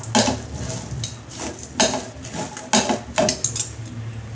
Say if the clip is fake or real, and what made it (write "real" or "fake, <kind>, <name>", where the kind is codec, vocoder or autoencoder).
real